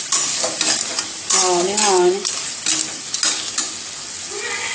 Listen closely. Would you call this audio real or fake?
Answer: real